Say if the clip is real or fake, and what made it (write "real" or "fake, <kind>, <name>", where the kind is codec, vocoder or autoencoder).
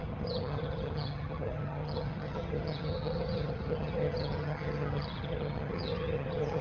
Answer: fake, vocoder, HiFi-GAN